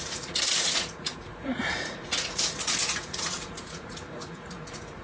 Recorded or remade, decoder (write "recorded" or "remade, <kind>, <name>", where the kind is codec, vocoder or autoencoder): remade, vocoder, Vocos